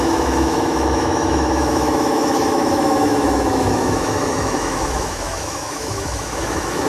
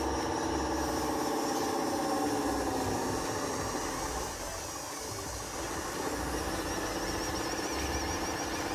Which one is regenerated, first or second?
first